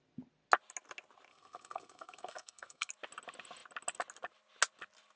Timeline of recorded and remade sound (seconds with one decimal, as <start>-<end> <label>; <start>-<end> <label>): 0.0-1.3 recorded; 1.3-2.9 remade; 2.9-5.2 recorded